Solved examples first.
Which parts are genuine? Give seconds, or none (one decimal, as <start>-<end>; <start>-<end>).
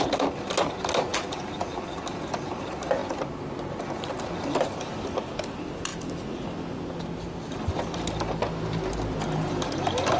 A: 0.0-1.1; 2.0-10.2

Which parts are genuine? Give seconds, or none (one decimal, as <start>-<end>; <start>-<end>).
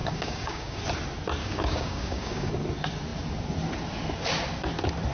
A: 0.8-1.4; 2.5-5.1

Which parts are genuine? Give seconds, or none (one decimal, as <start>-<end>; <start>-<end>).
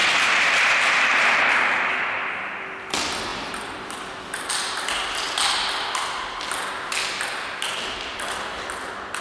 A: 1.4-3.3; 4.5-9.2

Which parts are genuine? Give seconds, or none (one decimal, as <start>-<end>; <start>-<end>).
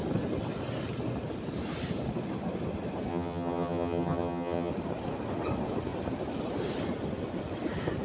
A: 0.0-3.1; 4.7-8.0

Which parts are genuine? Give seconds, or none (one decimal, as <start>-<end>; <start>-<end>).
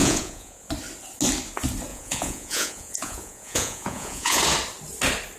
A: 0.7-1.9; 4.4-5.4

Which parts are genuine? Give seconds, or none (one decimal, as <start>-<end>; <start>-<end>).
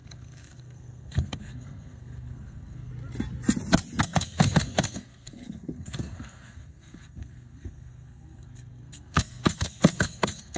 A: 2.9-4.0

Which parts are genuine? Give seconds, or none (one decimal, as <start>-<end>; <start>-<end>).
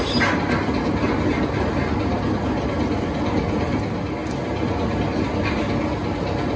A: 0.0-6.6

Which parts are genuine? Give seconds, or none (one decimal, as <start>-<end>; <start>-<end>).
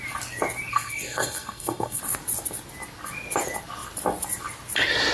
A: 0.0-0.7; 2.0-5.1